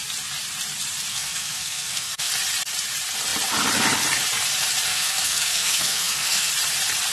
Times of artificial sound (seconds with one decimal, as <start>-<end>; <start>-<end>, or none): 1.1-2.3; 4.9-6.5